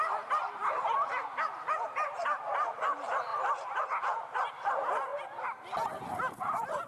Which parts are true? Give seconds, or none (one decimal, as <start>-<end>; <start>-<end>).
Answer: 0.0-1.6; 3.3-3.8; 5.1-6.9